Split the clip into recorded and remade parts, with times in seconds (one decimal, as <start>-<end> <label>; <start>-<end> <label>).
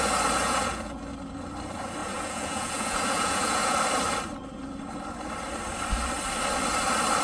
0.0-0.4 recorded; 0.4-1.0 remade; 1.0-2.0 recorded; 2.0-3.8 remade; 3.8-7.2 recorded